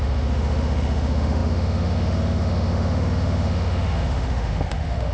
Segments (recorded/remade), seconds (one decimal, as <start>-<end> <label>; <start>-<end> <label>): 0.0-5.1 remade